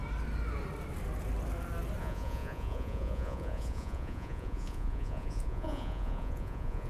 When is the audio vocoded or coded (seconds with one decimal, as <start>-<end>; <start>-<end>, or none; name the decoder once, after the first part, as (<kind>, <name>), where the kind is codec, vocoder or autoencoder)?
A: 2.0-6.9 (vocoder, Vocos)